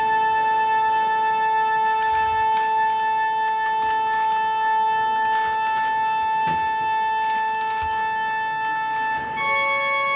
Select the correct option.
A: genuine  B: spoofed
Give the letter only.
A